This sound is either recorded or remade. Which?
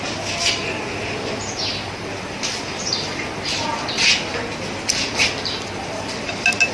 recorded